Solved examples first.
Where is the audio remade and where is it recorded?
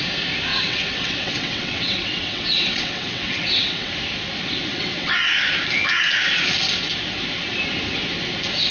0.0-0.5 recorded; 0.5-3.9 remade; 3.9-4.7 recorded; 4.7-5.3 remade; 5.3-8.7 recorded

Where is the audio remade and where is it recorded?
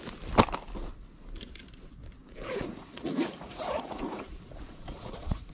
0.0-2.2 recorded; 2.2-5.5 remade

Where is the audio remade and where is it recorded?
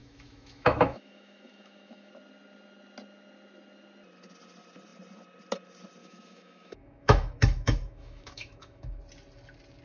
0.0-2.1 remade; 2.1-6.0 recorded; 6.0-9.0 remade; 9.0-9.8 recorded